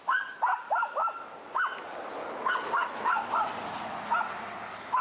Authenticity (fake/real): real